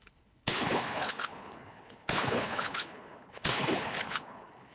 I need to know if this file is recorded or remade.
remade